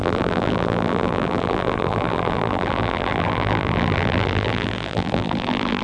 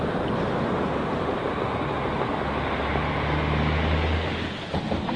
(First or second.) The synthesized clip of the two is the first